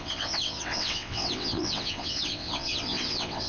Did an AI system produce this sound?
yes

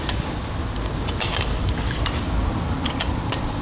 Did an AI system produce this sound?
no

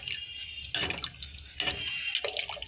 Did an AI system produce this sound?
no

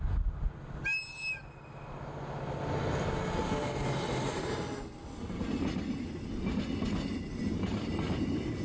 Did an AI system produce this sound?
no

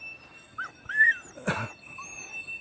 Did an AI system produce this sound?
no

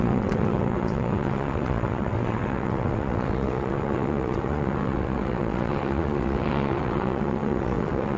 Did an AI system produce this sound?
yes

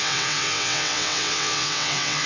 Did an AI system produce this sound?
yes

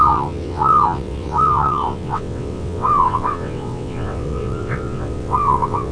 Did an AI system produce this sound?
yes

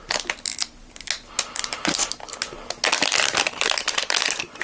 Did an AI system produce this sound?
no